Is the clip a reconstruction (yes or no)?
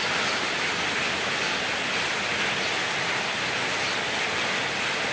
no